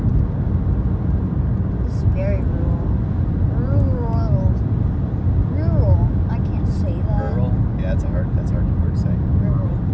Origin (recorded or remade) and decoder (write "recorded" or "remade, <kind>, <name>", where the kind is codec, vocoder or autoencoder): recorded